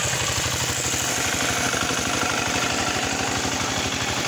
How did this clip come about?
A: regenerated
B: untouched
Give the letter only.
B